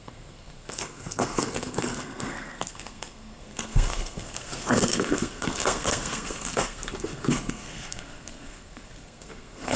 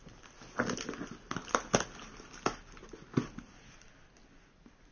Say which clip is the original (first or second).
second